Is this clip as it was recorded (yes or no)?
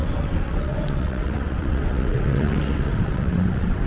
no